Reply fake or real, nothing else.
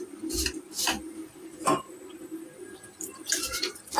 real